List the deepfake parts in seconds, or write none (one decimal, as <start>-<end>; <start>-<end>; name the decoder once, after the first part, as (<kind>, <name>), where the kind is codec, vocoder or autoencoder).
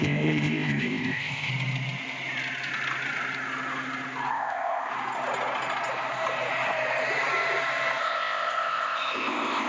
0.0-1.5 (codec, ZipCodec); 4.3-4.9; 8.0-9.7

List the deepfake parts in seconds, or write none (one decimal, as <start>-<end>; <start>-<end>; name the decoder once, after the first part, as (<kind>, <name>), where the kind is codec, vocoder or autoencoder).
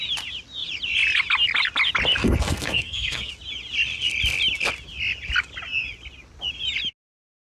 2.2-3.3 (codec, SNAC)